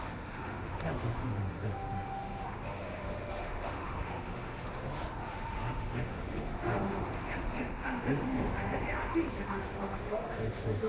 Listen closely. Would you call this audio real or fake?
fake